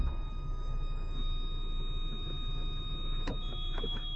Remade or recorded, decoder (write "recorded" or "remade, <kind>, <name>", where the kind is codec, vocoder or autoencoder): remade, autoencoder, DAC-VAE